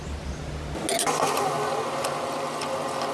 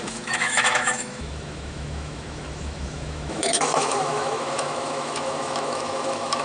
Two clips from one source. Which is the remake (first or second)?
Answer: second